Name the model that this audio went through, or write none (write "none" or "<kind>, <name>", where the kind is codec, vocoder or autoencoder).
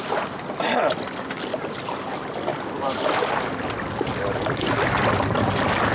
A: none